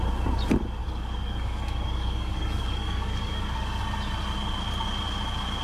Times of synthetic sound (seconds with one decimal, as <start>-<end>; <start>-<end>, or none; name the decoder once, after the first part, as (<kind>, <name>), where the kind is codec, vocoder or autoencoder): 0.8-3.8 (codec, DAC)